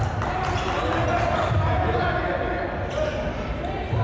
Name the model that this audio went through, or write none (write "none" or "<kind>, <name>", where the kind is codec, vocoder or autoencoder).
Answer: none